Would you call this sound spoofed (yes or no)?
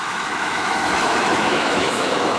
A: yes